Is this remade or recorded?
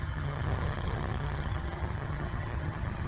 remade